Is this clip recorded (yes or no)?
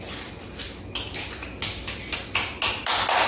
yes